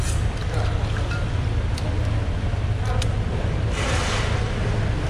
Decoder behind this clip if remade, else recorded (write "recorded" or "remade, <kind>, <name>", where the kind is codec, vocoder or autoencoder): recorded